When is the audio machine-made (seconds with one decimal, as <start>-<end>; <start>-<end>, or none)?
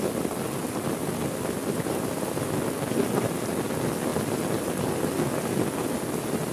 none